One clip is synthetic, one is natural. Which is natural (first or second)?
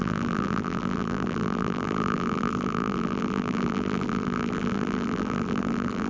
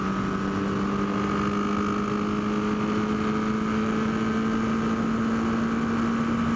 second